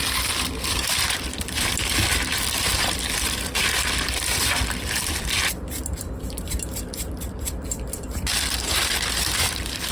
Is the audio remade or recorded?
remade